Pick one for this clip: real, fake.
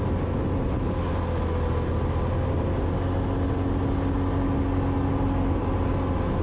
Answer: real